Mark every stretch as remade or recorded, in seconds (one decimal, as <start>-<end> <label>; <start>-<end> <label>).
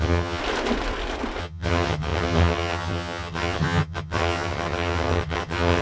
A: 0.0-0.4 remade; 0.4-1.4 recorded; 1.4-5.8 remade